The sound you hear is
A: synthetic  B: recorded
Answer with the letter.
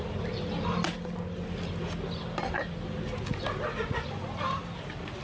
B